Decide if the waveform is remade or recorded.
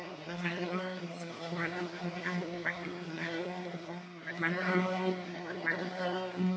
remade